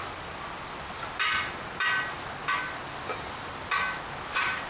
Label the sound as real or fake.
real